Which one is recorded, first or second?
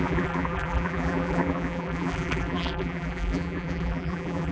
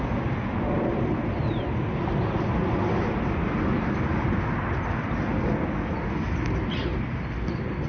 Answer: second